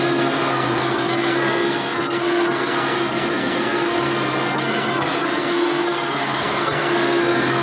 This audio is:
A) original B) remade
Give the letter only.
B